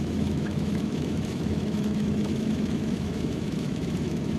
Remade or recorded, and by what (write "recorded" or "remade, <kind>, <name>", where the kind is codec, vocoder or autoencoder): remade, autoencoder, DAC-VAE